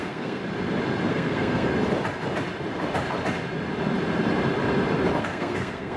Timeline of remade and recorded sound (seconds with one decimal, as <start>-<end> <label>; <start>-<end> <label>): 0.0-0.4 remade; 0.4-1.1 recorded; 1.1-1.7 remade; 1.7-5.2 recorded; 5.2-6.0 remade